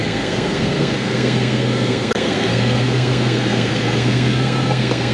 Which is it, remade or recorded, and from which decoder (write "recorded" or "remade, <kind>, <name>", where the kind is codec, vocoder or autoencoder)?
remade, codec, SNAC